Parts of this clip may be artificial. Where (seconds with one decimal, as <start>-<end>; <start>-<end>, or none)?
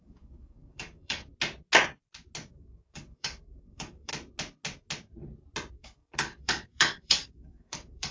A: 0.0-1.3; 2.5-4.1; 5.7-8.1